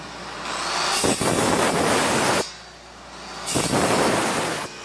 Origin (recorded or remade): recorded